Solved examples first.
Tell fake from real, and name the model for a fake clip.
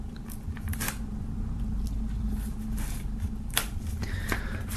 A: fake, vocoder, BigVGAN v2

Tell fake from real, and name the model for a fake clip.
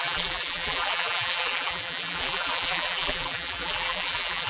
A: fake, vocoder, BigVGAN v2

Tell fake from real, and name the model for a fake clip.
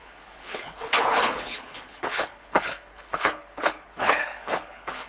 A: fake, codec, HILCodec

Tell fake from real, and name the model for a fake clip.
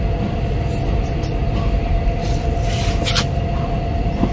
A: real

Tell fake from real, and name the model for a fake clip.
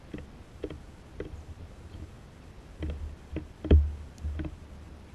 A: real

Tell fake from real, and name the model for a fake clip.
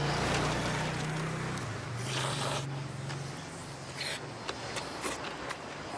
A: real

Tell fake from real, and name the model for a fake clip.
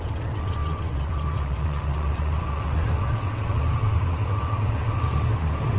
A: fake, vocoder, WaveNeXt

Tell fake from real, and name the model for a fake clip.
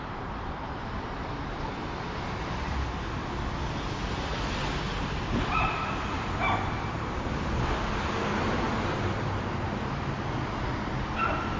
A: real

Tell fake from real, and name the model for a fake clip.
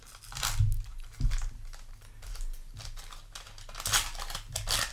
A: real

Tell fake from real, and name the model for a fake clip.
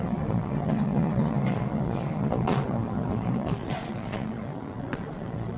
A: fake, vocoder, Vocos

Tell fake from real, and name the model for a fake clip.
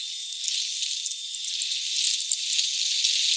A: real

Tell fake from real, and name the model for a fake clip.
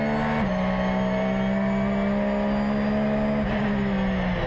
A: real